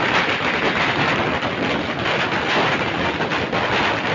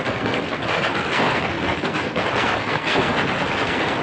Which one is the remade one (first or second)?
second